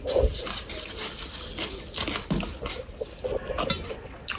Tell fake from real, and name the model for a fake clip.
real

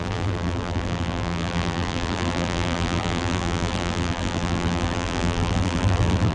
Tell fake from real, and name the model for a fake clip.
fake, vocoder, BigVGAN v2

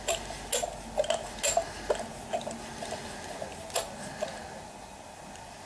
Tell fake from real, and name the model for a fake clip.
real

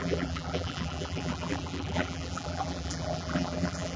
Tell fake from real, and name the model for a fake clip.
fake, vocoder, BigVGAN v2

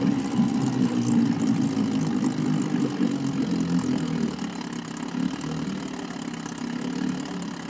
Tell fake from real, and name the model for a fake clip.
real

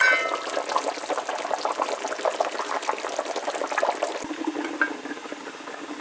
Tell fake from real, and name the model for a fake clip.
real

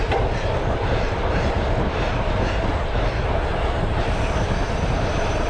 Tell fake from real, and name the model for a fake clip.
fake, vocoder, BigVGAN v2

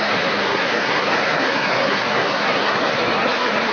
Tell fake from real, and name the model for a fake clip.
fake, codec, SNAC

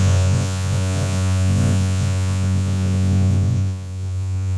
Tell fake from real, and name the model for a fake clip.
fake, vocoder, Vocos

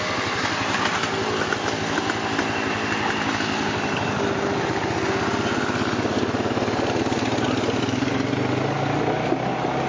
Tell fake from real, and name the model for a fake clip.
real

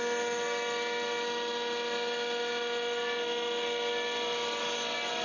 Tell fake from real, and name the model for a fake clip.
real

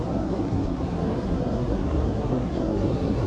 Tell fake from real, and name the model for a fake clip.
fake, codec, SNAC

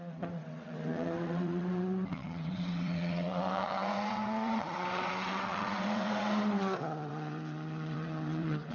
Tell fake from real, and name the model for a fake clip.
fake, vocoder, WaveNeXt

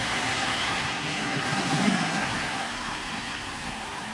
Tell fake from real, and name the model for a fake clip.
fake, codec, SNAC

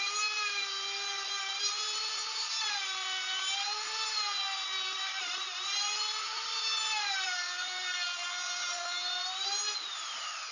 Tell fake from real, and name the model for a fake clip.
fake, vocoder, BigVGAN v2